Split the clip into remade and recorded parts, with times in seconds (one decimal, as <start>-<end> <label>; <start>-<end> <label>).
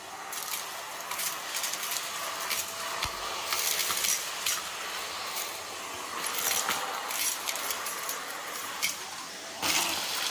0.0-7.0 recorded; 7.0-9.6 remade; 9.6-10.3 recorded